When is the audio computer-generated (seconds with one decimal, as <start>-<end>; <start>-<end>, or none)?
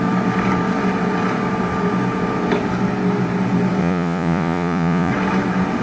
3.8-5.1